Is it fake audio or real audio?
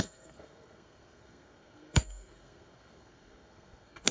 fake